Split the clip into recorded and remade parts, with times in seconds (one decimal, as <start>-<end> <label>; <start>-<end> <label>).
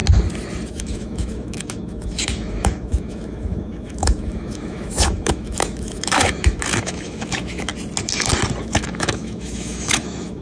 0.0-0.7 recorded; 0.7-7.7 remade; 7.7-8.6 recorded; 8.6-10.4 remade